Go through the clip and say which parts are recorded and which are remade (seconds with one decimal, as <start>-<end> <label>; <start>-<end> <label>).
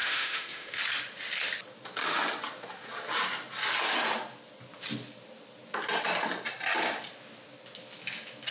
0.0-0.8 remade; 0.8-8.5 recorded